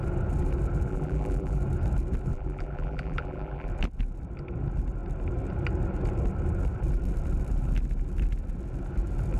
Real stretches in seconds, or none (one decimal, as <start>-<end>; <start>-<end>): 0.0-0.9; 1.6-2.3; 3.7-9.4